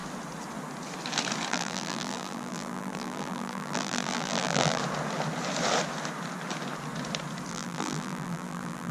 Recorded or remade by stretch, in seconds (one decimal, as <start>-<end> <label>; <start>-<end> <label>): 0.0-1.5 recorded; 1.5-4.8 remade; 4.8-7.5 recorded; 7.5-8.9 remade